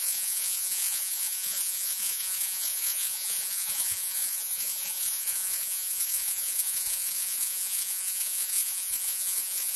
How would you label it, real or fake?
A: fake